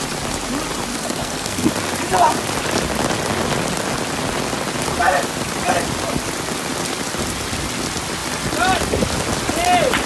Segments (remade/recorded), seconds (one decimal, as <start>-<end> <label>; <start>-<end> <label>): 0.0-0.9 recorded; 0.9-1.7 remade; 1.7-10.1 recorded